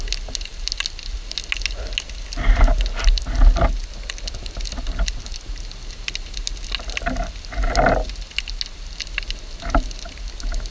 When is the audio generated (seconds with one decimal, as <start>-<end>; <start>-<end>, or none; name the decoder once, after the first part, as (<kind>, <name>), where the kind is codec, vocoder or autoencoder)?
none